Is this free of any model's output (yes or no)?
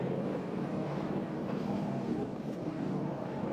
no